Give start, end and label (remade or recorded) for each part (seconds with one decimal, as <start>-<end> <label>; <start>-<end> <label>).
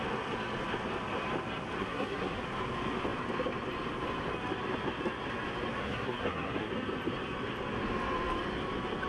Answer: 0.0-1.8 recorded; 1.8-2.4 remade; 2.4-5.8 recorded; 5.8-6.7 remade; 6.7-9.1 recorded